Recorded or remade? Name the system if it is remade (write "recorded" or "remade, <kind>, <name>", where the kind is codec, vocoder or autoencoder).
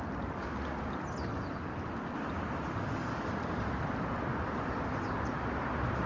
recorded